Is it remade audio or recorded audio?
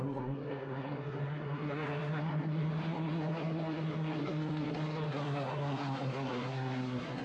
remade